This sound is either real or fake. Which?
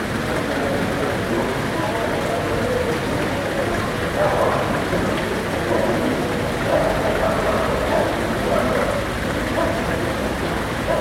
real